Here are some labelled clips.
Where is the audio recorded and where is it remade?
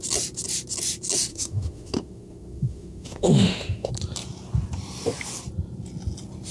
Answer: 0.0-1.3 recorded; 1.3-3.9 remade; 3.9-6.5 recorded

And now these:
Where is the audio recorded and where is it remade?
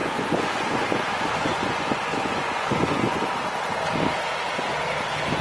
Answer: 0.0-3.2 remade; 3.2-5.4 recorded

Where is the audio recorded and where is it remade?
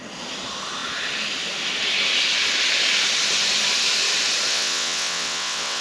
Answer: 0.0-4.5 recorded; 4.5-5.8 remade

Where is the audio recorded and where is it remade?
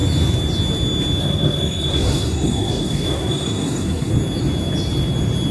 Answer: 0.0-1.2 recorded; 1.2-4.1 remade; 4.1-5.5 recorded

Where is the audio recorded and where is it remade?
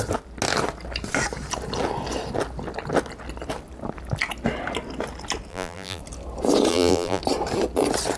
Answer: 0.0-5.5 recorded; 5.5-6.0 remade; 6.0-6.7 recorded; 6.7-7.2 remade; 7.2-8.2 recorded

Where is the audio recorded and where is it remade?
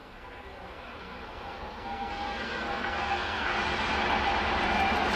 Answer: 0.0-3.6 remade; 3.6-5.2 recorded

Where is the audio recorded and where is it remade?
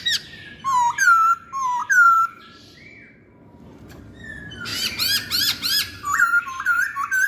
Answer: 0.0-1.8 recorded; 1.8-4.0 remade; 4.0-4.7 recorded; 4.7-7.3 remade